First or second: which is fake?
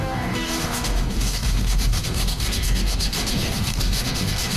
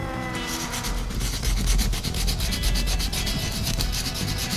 first